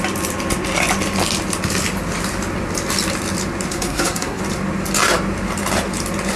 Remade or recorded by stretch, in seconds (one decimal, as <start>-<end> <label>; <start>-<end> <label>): 0.0-3.7 recorded; 3.7-4.4 remade; 4.4-6.4 recorded